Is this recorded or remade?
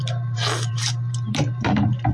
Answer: remade